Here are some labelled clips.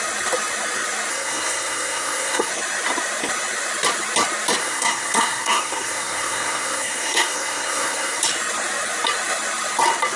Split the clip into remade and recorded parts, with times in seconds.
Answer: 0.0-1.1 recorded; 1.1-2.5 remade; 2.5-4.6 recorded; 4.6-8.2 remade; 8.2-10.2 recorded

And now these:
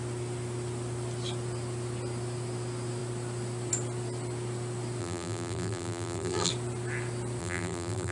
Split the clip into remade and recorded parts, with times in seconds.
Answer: 0.0-5.0 recorded; 5.0-6.5 remade; 6.5-7.4 recorded; 7.4-8.1 remade

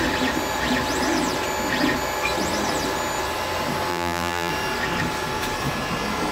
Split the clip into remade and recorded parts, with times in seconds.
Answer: 0.0-3.9 recorded; 3.9-4.5 remade; 4.5-6.3 recorded

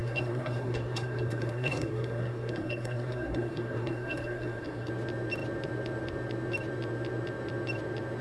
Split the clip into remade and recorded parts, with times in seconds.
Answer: 0.0-4.9 remade; 4.9-8.2 recorded

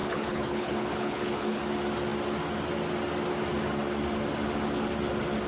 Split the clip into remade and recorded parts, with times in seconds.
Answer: 0.0-1.6 remade; 1.6-5.5 recorded

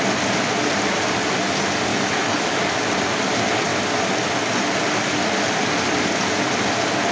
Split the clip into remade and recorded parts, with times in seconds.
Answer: 0.0-1.9 recorded; 1.9-2.6 remade; 2.6-7.1 recorded

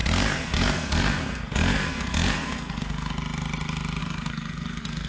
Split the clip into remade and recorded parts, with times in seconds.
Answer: 0.0-3.1 remade; 3.1-4.0 recorded; 4.0-5.1 remade

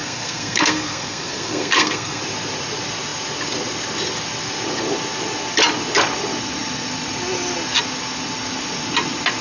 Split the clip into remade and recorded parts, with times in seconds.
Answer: 0.0-2.2 remade; 2.2-9.4 recorded